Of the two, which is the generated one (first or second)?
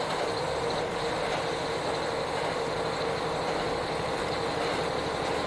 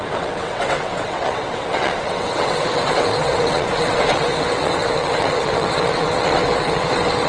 second